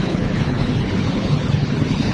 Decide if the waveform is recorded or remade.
remade